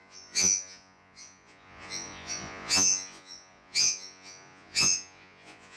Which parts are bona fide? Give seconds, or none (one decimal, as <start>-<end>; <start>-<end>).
none